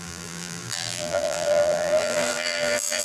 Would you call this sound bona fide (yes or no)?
no